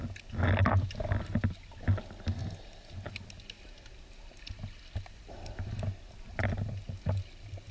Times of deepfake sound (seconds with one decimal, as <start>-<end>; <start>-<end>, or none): none